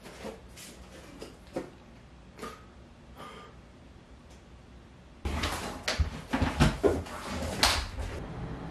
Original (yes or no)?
yes